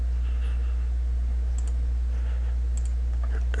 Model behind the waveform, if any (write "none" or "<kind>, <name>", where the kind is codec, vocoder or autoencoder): none